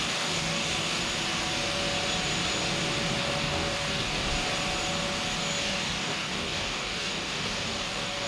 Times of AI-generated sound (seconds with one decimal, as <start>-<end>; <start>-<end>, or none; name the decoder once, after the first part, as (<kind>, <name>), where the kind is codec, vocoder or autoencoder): 0.0-1.0 (codec, DAC); 3.2-4.3; 5.6-8.3